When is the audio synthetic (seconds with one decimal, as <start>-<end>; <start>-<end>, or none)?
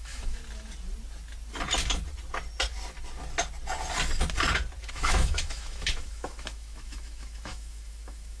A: 0.0-0.4; 4.9-8.4